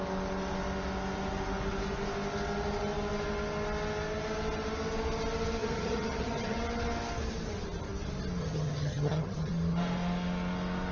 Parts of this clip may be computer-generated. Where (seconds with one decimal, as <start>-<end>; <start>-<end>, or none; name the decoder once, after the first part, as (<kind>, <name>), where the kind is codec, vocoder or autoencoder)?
5.6-6.6 (vocoder, HiFi-GAN); 8.4-9.5